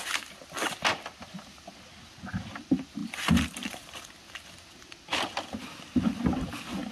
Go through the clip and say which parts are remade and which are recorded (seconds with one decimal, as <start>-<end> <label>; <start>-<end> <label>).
0.0-6.9 recorded